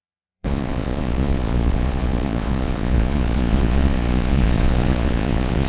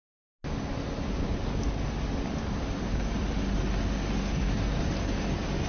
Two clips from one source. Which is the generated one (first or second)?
first